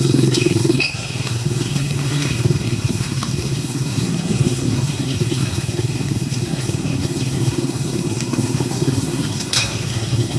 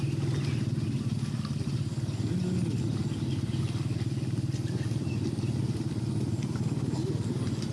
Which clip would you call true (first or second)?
second